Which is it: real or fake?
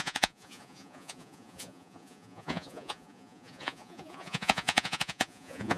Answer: fake